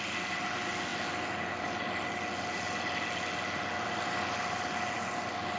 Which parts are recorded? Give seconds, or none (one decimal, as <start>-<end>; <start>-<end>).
0.0-5.6